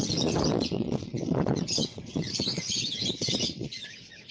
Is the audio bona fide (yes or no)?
no